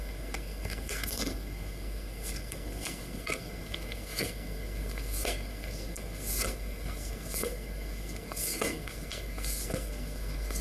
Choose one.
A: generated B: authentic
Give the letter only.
A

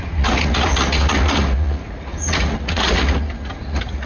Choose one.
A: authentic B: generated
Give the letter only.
B